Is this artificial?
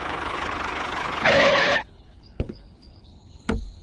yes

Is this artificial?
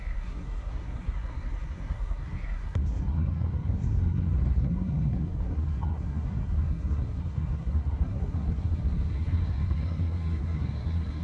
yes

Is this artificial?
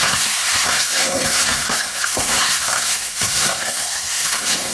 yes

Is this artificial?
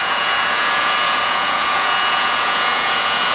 yes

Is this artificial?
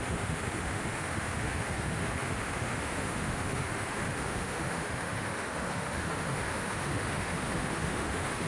yes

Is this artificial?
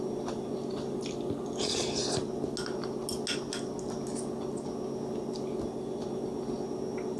no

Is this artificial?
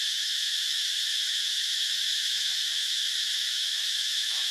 yes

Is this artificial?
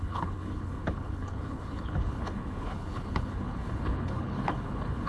yes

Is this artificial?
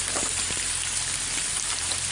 no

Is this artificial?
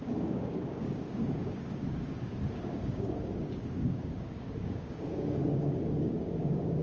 yes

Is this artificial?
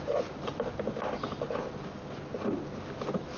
no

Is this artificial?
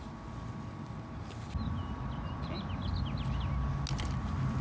no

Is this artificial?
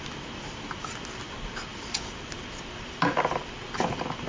no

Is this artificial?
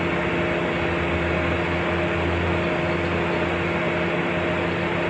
no